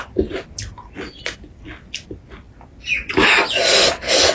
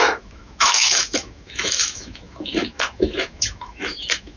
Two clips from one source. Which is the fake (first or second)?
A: second